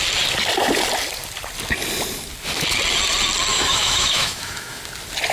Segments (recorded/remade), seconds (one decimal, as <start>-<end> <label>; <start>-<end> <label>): 0.0-3.5 recorded; 3.5-4.8 remade; 4.8-5.3 recorded